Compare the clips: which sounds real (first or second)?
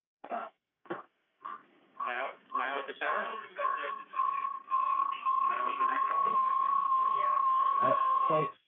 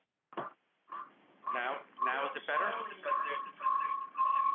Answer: second